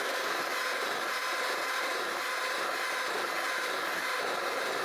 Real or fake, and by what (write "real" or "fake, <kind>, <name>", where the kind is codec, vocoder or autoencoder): real